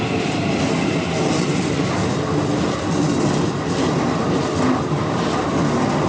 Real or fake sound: real